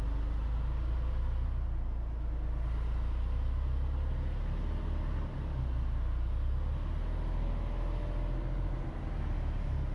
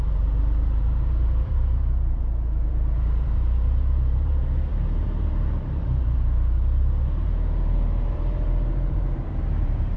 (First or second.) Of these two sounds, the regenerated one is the second